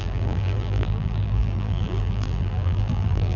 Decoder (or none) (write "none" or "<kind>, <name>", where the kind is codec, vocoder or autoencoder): vocoder, BigVGAN v2